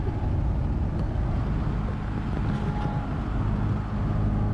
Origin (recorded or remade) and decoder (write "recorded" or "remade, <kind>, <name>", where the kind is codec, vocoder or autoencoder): recorded